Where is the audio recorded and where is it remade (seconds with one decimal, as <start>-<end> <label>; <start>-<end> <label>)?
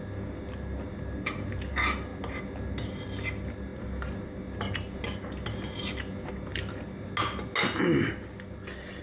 0.0-9.0 recorded